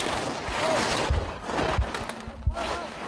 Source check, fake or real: real